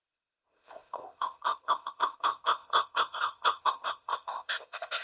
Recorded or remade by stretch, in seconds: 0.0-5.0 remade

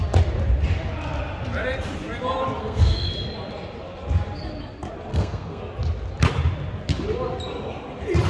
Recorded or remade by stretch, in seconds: 0.0-2.6 recorded; 2.6-3.1 remade; 3.1-5.1 recorded; 5.1-5.6 remade; 5.6-8.3 recorded

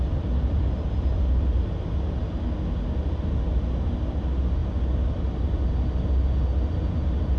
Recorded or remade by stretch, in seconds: 0.0-7.4 recorded